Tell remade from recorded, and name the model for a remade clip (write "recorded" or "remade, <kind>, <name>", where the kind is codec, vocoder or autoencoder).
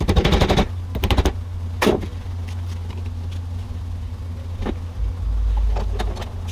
recorded